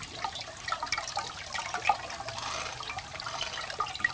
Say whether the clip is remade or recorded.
recorded